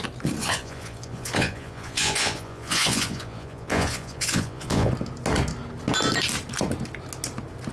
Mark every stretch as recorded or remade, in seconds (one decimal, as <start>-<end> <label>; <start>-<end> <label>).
0.0-0.4 recorded; 0.4-4.9 remade; 4.9-7.7 recorded